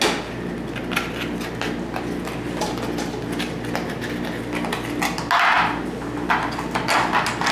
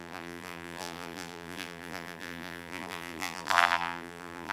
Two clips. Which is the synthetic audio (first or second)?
second